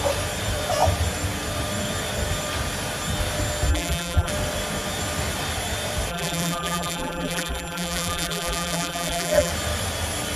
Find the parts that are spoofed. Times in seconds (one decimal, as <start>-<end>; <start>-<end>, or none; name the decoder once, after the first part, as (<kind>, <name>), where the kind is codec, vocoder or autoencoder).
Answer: 3.7-4.3 (vocoder, BigVGAN v2); 6.1-9.5